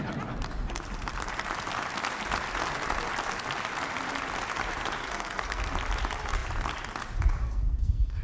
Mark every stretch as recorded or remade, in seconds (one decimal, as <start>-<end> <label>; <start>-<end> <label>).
0.0-5.0 recorded; 5.0-5.7 remade; 5.7-7.4 recorded; 7.4-8.2 remade